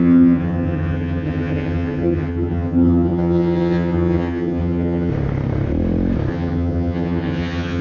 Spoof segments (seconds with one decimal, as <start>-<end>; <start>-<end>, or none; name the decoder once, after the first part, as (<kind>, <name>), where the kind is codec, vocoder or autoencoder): 0.0-5.1 (vocoder, HiFi-GAN); 6.3-7.8